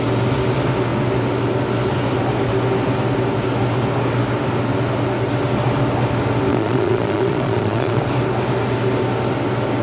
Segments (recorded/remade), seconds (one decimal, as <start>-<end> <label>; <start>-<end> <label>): 0.0-6.5 recorded; 6.5-8.0 remade; 8.0-9.8 recorded